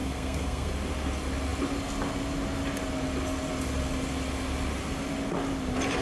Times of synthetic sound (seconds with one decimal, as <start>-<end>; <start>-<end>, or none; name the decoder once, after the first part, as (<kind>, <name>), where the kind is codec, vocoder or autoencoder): 0.0-0.7 (codec, SNAC)